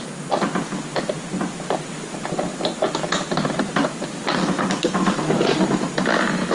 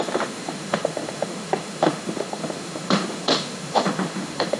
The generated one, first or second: second